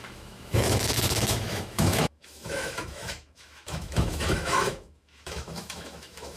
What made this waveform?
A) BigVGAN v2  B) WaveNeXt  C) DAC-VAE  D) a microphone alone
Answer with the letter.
C